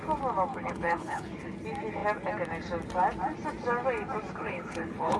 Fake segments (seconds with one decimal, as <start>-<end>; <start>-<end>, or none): 0.5-1.3; 4.4-5.2